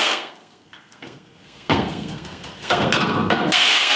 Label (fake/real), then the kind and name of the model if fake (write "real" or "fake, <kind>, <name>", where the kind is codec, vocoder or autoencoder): fake, codec, SNAC